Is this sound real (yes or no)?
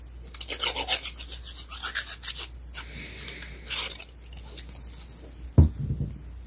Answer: yes